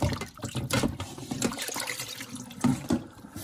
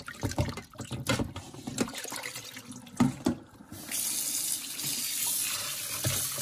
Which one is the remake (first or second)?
first